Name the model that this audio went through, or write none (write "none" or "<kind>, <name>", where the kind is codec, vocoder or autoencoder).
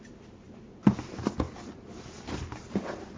none